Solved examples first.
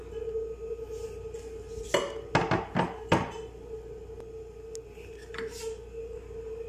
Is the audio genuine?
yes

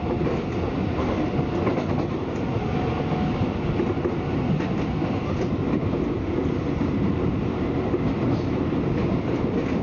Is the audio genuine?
yes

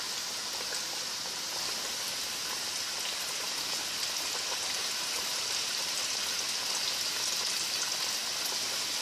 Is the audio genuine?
yes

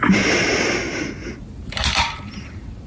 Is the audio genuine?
yes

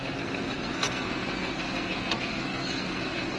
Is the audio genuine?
no